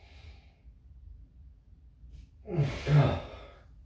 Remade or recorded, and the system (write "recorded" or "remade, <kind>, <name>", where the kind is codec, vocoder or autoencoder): recorded